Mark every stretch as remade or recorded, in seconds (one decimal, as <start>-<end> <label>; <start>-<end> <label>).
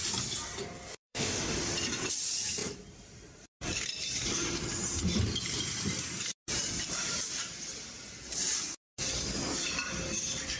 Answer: 0.0-0.9 recorded; 0.9-1.4 remade; 1.4-10.6 recorded